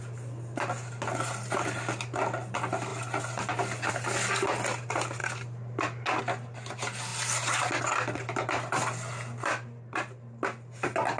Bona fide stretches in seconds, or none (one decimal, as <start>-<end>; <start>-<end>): 0.0-11.2